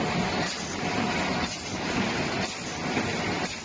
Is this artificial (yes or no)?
yes